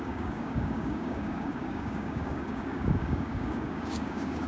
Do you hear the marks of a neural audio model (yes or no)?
yes